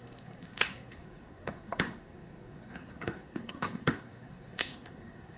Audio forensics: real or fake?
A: fake